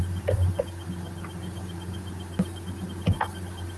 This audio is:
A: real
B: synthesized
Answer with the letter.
A